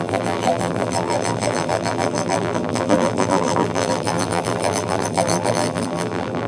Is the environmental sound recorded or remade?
remade